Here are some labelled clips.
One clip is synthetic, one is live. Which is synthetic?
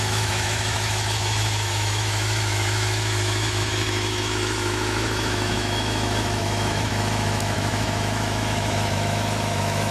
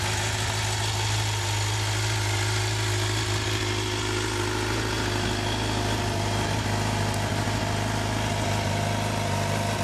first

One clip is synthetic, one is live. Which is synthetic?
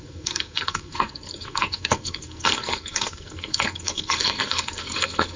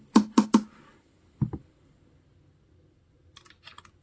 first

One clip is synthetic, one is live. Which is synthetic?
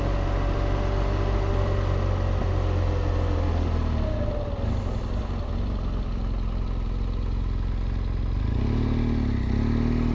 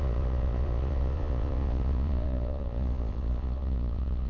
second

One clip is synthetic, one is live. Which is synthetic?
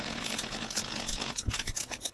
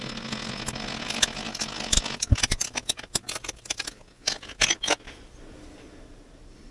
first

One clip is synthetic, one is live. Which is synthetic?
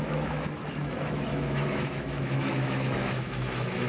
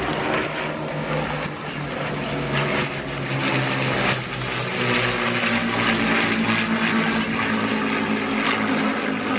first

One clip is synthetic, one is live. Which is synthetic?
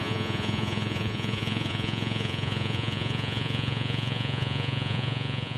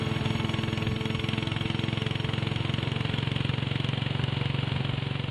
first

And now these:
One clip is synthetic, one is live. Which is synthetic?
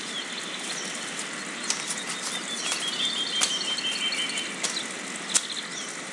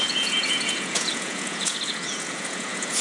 second